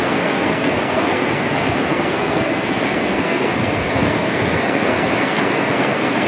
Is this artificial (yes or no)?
yes